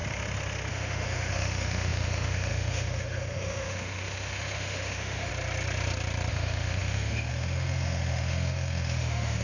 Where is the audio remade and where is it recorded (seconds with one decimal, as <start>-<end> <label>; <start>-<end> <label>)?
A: 0.0-0.7 recorded; 0.7-5.3 remade; 5.3-6.3 recorded; 6.3-9.4 remade

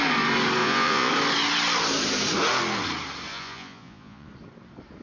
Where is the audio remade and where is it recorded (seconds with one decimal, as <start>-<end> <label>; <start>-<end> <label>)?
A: 0.0-0.6 recorded; 0.6-1.1 remade; 1.1-3.3 recorded; 3.3-4.3 remade; 4.3-5.0 recorded

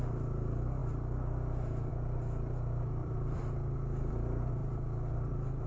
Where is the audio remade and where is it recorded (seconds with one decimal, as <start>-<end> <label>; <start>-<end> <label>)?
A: 0.0-3.0 recorded; 3.0-4.1 remade; 4.1-4.6 recorded; 4.6-5.3 remade; 5.3-5.7 recorded